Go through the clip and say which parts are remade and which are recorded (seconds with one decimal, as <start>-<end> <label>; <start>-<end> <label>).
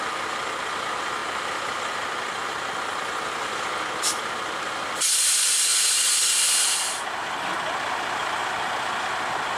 0.0-9.6 recorded